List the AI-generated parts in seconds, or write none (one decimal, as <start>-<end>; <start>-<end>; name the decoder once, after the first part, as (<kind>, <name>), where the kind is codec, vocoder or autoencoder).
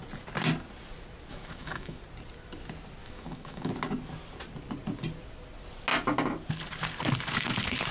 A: 1.3-2.0 (autoencoder, DAC-VAE); 3.0-3.7